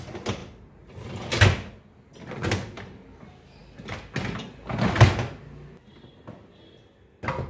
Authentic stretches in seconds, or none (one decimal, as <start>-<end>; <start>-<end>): 0.0-7.5

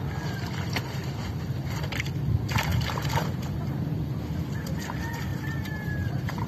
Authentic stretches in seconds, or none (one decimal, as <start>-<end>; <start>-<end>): 0.0-5.3